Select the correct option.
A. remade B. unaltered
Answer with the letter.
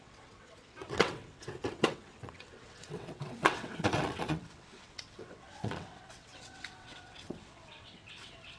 A